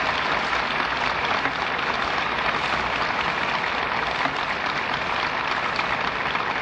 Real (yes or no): yes